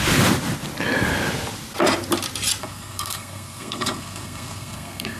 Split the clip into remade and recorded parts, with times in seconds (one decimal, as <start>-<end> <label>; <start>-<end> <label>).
0.0-2.6 recorded; 2.6-5.2 remade